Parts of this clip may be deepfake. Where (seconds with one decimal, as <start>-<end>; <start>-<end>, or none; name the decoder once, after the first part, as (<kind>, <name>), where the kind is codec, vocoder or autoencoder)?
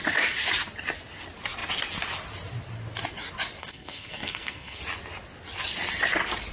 3.6-4.8 (codec, SNAC)